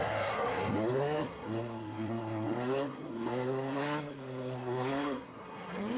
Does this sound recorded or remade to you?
remade